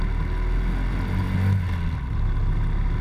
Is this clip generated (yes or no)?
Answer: no